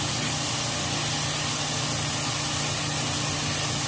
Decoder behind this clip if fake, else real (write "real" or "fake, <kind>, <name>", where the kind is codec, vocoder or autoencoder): real